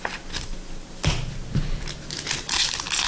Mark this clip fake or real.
real